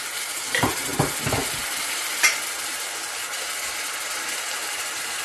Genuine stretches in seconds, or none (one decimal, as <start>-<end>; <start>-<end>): 0.9-4.0